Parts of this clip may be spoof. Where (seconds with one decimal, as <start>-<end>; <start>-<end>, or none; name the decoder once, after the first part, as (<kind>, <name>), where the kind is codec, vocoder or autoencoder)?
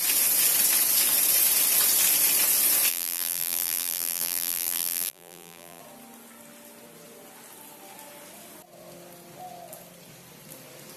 2.9-5.8 (vocoder, BigVGAN v2)